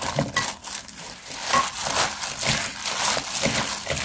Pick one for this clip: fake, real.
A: real